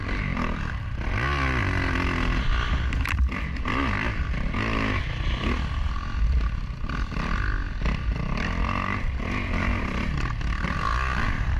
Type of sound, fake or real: real